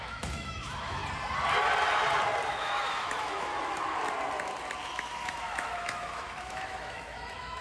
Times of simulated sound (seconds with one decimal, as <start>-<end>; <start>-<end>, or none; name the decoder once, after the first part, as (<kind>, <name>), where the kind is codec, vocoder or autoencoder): 0.0-1.0 (autoencoder, DAC-VAE); 2.5-3.5; 4.8-7.6